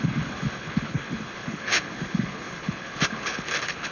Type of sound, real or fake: fake